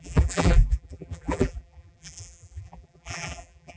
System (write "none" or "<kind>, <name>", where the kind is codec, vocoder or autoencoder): vocoder, BigVGAN v2